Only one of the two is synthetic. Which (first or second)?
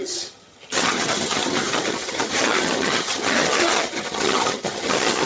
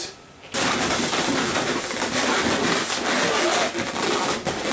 first